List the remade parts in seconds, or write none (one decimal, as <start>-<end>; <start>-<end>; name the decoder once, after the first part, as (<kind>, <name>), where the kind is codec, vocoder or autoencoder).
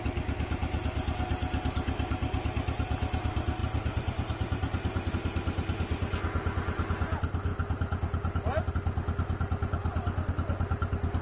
none